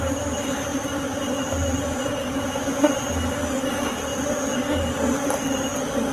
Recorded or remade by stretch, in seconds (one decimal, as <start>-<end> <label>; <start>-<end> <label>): 0.0-6.1 recorded